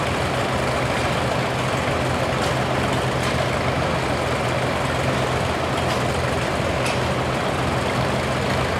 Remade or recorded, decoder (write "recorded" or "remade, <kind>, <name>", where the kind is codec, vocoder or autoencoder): recorded